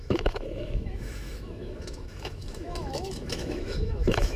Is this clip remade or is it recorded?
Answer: remade